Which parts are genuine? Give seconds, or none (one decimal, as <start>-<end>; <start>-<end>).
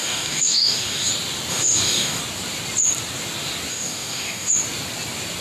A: 1.1-1.5; 2.2-3.7; 4.5-5.4